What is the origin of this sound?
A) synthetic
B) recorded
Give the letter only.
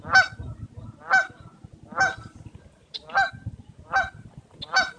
B